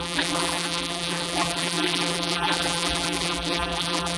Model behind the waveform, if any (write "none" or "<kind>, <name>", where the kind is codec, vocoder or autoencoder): vocoder, BigVGAN v2